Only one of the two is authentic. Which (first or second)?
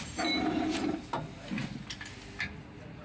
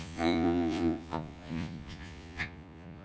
first